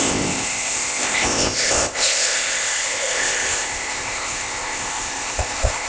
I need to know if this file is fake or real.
fake